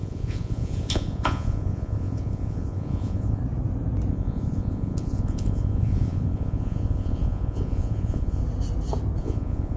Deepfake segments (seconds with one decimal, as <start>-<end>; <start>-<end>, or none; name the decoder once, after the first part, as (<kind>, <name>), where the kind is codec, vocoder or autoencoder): 0.0-3.4 (vocoder, Vocos); 4.1-8.4; 9.2-9.8